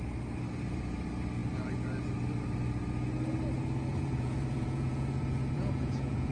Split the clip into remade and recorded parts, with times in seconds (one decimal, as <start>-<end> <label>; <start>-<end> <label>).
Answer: 0.0-3.9 recorded; 3.9-6.3 remade